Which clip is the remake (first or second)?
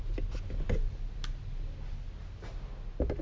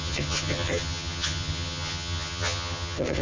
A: second